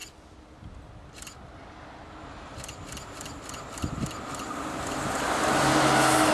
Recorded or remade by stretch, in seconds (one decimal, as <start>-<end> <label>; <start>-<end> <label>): 0.0-6.3 recorded